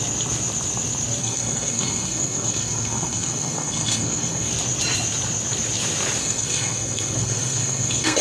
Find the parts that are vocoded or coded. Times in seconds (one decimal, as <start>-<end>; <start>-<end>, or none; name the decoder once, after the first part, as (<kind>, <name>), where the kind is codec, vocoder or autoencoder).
1.2-4.5 (codec, SNAC); 6.2-8.2